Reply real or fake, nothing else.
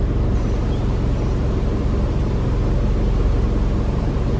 real